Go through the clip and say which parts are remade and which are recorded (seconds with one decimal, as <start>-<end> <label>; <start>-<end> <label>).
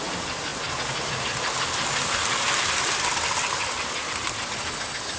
0.0-5.2 recorded